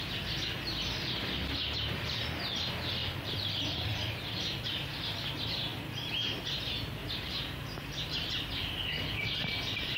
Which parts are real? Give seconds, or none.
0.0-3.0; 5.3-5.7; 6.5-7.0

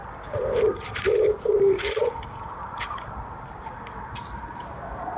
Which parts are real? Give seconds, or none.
none

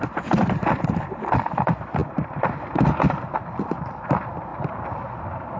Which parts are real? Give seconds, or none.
4.5-5.6

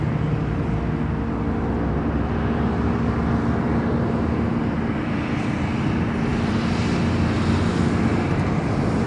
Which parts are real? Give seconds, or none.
0.0-9.1

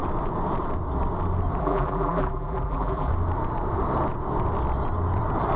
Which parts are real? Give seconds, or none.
0.0-1.6; 3.1-5.6